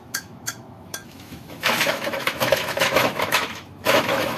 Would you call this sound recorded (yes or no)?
no